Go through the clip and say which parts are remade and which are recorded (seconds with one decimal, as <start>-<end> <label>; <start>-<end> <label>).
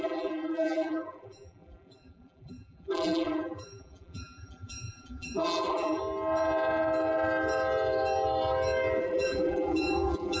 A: 0.0-6.0 remade; 6.0-9.0 recorded; 9.0-10.4 remade